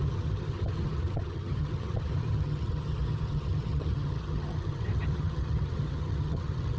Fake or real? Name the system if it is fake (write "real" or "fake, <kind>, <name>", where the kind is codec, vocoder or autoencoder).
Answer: fake, vocoder, HiFi-GAN